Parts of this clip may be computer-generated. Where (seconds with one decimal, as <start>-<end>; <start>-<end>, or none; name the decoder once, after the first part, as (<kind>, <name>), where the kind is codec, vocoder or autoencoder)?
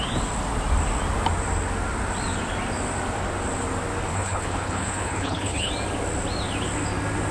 4.1-5.7 (codec, HILCodec)